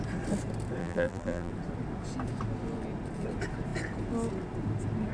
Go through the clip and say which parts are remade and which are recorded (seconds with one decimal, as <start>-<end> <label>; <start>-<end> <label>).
0.0-0.8 recorded; 0.8-1.5 remade; 1.5-5.1 recorded